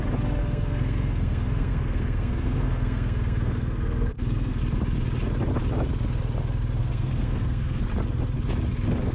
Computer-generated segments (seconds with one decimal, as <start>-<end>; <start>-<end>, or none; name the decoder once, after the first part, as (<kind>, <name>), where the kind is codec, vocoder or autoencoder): 0.4-4.6 (codec, SNAC); 6.8-7.8